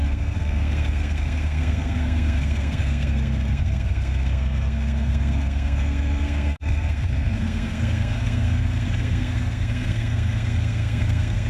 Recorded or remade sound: remade